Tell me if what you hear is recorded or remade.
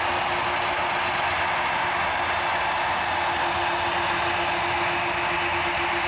recorded